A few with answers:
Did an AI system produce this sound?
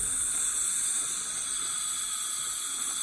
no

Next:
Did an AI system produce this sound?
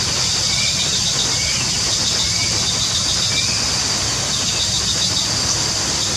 no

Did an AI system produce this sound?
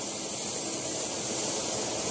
no